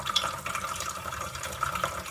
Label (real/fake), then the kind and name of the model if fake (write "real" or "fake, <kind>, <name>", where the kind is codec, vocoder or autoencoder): fake, vocoder, BigVGAN v2